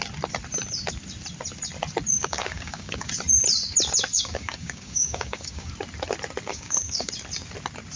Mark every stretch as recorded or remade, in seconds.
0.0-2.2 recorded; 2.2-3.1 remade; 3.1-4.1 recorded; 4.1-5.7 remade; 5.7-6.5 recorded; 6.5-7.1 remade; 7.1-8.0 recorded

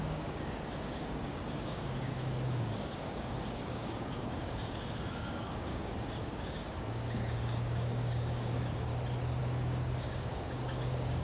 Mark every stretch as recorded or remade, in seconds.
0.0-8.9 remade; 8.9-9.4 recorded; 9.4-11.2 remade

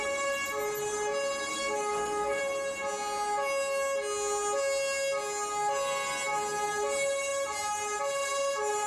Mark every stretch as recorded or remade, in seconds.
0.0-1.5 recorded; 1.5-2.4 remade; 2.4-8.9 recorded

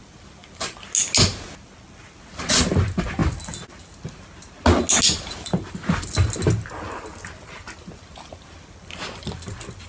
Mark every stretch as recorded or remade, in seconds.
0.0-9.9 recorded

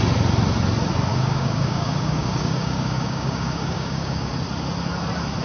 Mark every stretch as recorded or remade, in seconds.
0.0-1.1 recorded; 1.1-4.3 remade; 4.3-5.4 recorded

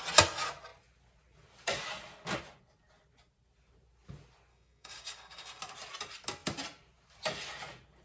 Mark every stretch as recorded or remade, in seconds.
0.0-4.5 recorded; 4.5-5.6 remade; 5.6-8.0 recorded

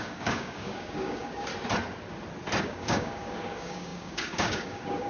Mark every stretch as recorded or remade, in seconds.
0.0-1.5 remade; 1.5-2.6 recorded; 2.6-5.1 remade